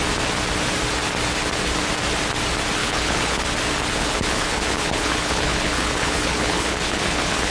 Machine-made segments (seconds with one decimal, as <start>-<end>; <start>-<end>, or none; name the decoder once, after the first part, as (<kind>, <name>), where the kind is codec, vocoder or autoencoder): 2.8-3.4 (codec, HILCodec); 4.0-7.5